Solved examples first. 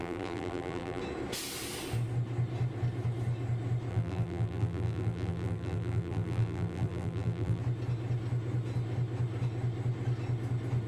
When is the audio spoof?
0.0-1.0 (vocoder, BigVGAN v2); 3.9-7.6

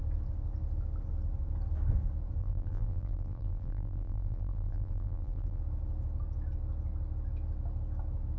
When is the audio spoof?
2.4-5.6 (vocoder, BigVGAN v2)